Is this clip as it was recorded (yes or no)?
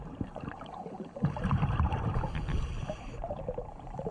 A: no